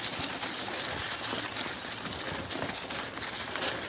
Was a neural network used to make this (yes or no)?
no